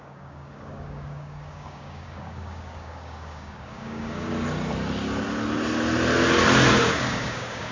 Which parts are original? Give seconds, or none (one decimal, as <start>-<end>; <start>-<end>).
4.3-6.7